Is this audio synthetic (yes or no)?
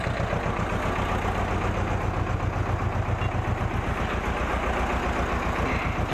no